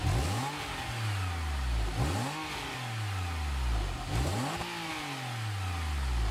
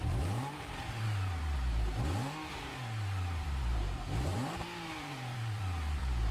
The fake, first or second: second